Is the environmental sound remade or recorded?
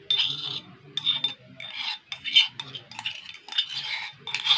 recorded